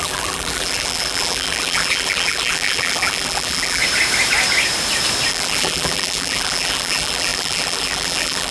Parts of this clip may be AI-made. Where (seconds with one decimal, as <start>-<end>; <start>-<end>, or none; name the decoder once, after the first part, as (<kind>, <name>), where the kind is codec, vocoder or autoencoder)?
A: 0.0-3.8 (vocoder, BigVGAN v2); 5.3-8.5